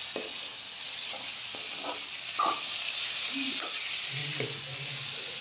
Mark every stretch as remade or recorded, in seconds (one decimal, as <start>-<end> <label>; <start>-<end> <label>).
0.0-4.2 recorded; 4.2-4.9 remade; 4.9-5.4 recorded